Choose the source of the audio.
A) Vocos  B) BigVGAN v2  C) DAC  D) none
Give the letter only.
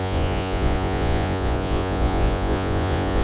A